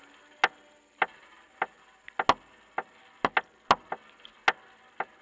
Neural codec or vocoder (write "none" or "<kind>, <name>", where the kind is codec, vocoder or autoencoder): none